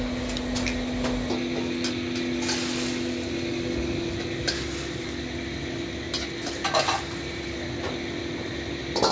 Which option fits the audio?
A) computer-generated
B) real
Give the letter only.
B